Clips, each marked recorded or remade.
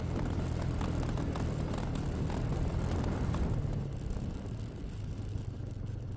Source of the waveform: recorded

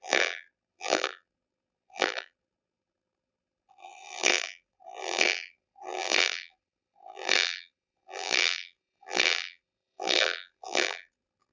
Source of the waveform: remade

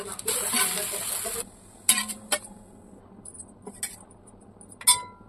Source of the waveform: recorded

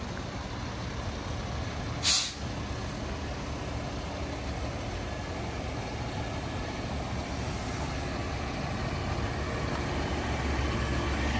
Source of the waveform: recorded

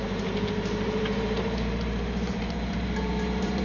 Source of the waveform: remade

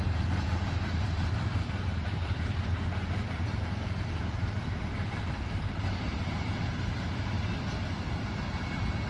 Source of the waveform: remade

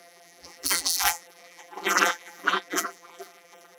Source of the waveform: remade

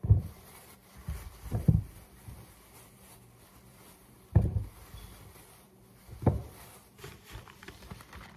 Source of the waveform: remade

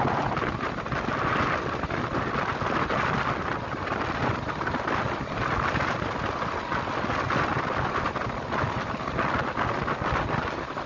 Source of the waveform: recorded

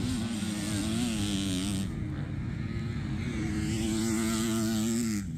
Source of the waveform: recorded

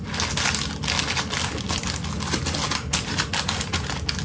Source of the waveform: recorded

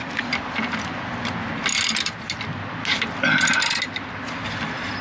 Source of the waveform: recorded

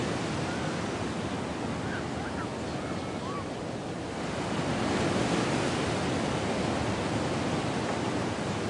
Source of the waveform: recorded